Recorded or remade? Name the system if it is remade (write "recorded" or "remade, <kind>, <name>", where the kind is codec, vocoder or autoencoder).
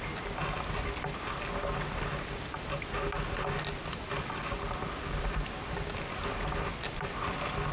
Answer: recorded